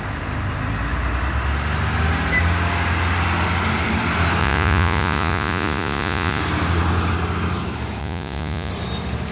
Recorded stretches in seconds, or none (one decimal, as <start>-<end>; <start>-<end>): 0.0-4.4; 6.4-8.0; 8.7-9.3